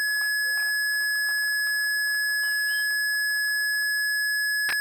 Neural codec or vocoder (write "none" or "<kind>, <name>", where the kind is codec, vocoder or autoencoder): none